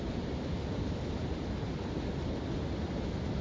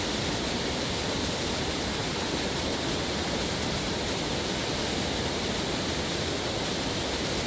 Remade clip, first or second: second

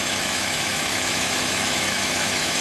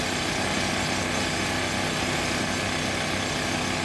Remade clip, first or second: first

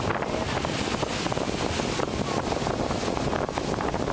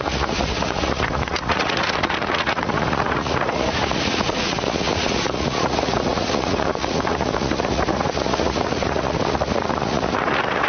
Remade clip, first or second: second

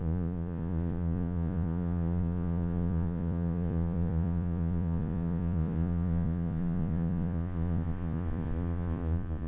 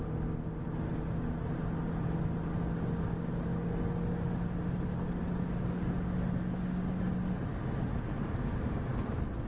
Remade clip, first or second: first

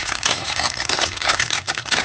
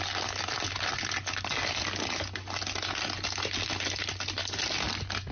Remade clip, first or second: first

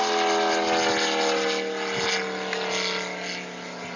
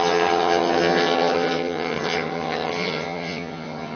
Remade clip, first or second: second